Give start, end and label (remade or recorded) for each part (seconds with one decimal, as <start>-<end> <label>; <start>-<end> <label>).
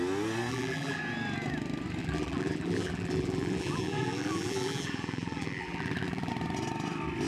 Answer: 0.0-0.5 recorded; 0.5-1.0 remade; 1.0-2.0 recorded; 2.0-6.3 remade; 6.3-7.3 recorded